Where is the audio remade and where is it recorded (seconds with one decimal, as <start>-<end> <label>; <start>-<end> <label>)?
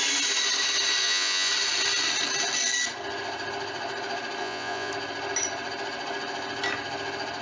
0.0-1.0 recorded; 1.0-1.5 remade; 1.5-4.4 recorded; 4.4-4.9 remade; 4.9-7.4 recorded